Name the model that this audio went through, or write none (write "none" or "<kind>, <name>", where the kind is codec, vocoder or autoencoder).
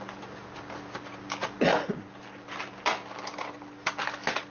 none